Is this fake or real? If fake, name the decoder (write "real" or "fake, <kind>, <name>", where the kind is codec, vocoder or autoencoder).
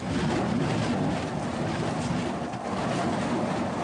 real